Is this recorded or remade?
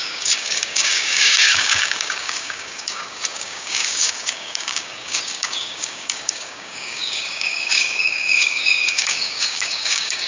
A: remade